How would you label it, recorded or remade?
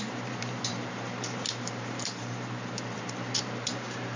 remade